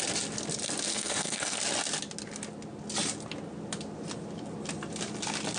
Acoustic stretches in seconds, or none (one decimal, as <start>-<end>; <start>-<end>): 0.0-0.9; 1.6-5.6